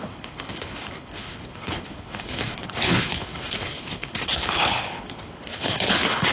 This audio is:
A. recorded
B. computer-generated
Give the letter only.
B